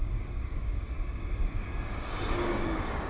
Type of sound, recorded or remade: remade